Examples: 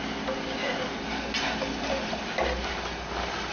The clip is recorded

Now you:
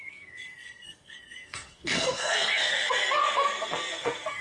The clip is remade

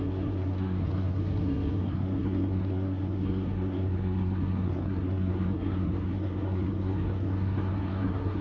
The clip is remade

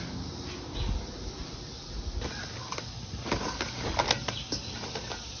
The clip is recorded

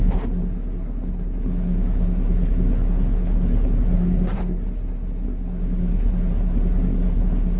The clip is remade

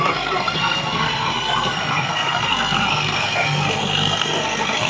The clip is remade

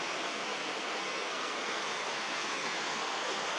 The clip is remade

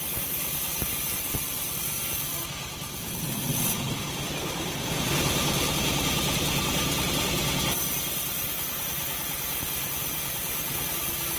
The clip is recorded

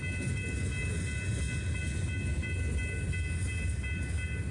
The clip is recorded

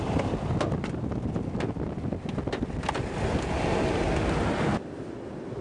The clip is recorded